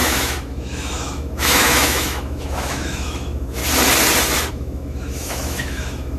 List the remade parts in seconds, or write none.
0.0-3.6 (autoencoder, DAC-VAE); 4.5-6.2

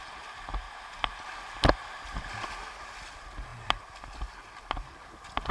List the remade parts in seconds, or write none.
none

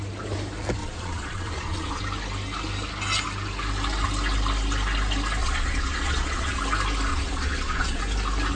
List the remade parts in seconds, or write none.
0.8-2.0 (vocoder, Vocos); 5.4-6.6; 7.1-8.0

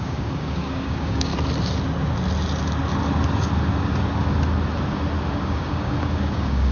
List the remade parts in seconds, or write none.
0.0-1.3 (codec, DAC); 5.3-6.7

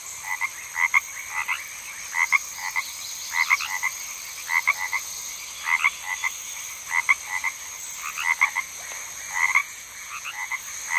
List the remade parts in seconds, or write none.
9.6-10.6 (vocoder, Vocos)

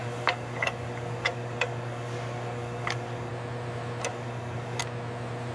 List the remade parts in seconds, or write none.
0.0-3.3 (codec, DAC); 4.1-4.8

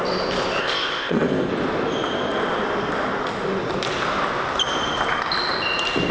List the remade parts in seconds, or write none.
0.6-1.5 (codec, ZipCodec)

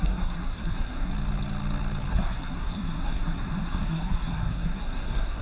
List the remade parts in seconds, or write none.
0.0-1.1 (codec, SNAC); 2.1-5.4